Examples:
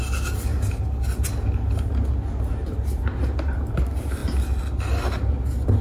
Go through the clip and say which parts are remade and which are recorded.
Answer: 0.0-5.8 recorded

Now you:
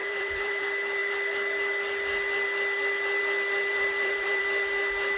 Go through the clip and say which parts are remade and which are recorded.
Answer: 0.0-0.6 remade; 0.6-3.7 recorded; 3.7-4.4 remade; 4.4-5.2 recorded